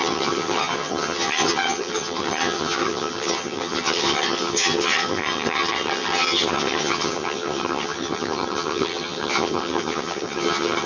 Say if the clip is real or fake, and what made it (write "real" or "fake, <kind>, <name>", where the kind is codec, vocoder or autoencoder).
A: fake, vocoder, HiFi-GAN